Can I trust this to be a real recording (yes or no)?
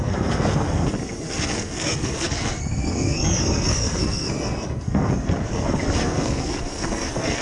no